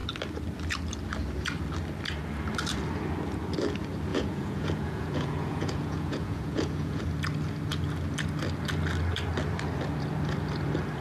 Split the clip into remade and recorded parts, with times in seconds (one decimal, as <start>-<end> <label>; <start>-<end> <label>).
0.0-4.1 recorded; 4.1-7.0 remade; 7.0-11.0 recorded